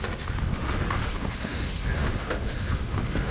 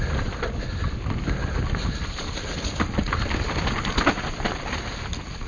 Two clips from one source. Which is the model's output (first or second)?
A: first